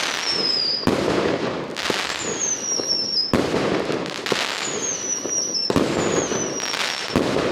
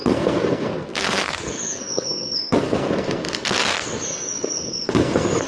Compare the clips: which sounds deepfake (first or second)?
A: second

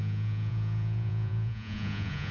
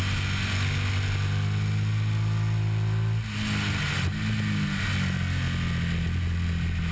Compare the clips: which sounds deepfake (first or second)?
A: first